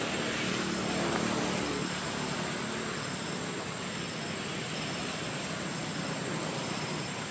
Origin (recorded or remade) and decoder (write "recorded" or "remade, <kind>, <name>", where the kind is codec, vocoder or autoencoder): recorded